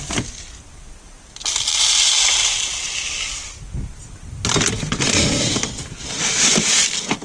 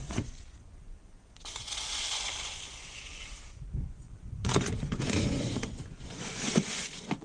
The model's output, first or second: second